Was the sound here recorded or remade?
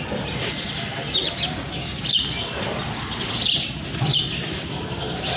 recorded